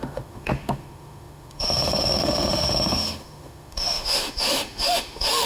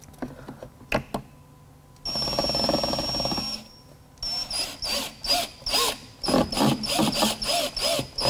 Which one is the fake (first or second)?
first